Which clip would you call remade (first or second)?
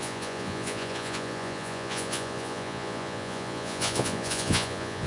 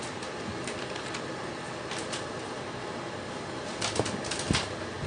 first